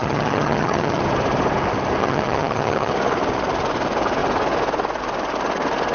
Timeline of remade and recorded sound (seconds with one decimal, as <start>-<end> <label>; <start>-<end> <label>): 0.0-1.0 remade; 1.0-2.0 recorded; 2.0-2.9 remade; 2.9-5.9 recorded

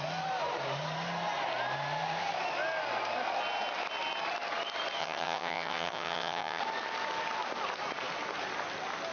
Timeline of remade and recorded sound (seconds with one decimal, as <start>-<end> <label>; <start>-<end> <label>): 0.0-5.0 recorded; 5.0-6.6 remade; 6.6-9.1 recorded

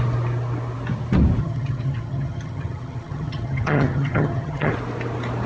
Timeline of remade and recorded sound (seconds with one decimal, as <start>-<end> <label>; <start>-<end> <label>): 0.0-1.4 recorded; 1.4-4.7 remade; 4.7-5.5 recorded

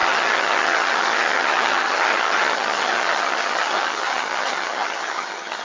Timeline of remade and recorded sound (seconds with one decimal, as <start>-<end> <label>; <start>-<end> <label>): 0.0-5.6 remade

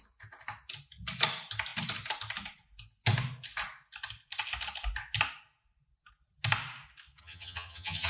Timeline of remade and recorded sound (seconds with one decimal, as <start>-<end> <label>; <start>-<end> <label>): 0.0-7.2 recorded; 7.2-8.1 remade

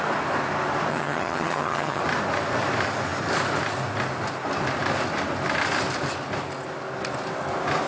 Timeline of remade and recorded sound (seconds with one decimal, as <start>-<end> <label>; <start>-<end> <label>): 0.0-0.9 recorded; 0.9-2.0 remade; 2.0-7.9 recorded

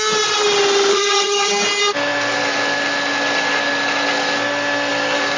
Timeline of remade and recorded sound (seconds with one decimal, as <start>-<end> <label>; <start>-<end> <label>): 0.0-0.9 recorded; 0.9-1.5 remade; 1.5-5.4 recorded

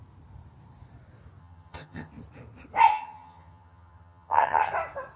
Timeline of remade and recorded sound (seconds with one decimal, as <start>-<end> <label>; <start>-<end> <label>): 0.0-1.4 recorded; 1.4-2.1 remade; 2.1-2.9 recorded; 2.9-4.7 remade; 4.7-5.2 recorded